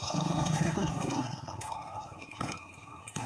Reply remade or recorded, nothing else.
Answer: remade